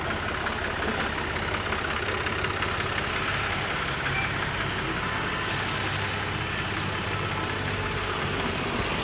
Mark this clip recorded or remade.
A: recorded